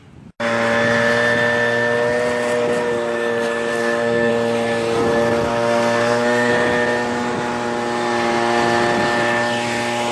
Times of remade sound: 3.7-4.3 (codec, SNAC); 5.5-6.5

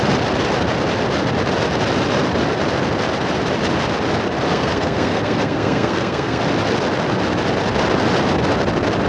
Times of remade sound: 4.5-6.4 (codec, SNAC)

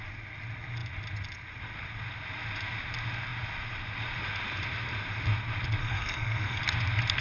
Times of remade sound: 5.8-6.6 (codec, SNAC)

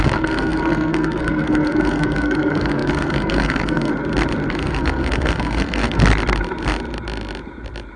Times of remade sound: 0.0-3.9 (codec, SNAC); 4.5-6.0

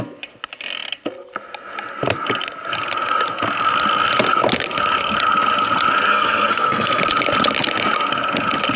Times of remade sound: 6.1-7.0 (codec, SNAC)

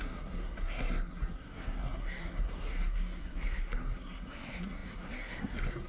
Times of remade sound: 0.0-5.9 (codec, SNAC)